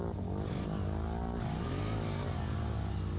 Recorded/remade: recorded